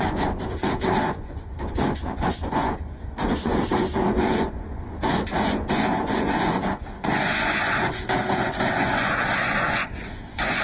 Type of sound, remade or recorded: remade